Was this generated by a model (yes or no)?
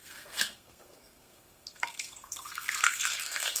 yes